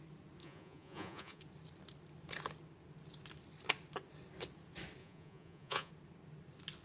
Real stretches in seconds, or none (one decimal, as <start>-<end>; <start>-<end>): 0.0-0.4; 1.4-5.0; 5.9-6.8

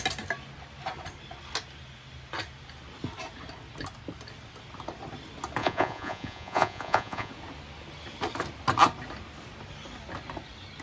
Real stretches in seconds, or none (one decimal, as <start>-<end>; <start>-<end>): 0.0-5.6; 7.3-10.8

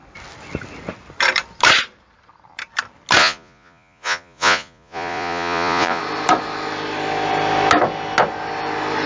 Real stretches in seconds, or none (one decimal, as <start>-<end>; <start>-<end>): 0.0-3.2; 6.0-9.1

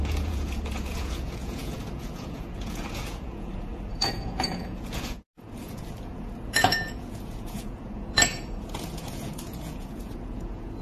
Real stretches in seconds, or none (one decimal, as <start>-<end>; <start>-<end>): none

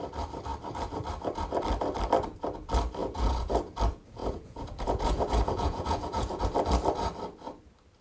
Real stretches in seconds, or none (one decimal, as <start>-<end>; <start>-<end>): 0.0-3.0; 3.6-4.2; 6.4-8.0

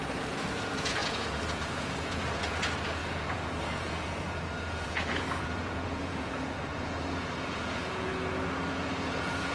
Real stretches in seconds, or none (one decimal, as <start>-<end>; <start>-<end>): 8.1-8.7